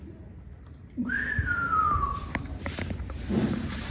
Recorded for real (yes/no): no